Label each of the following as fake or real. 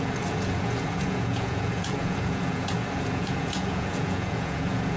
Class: fake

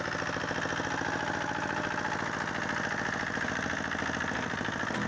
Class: real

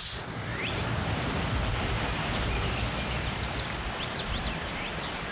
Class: real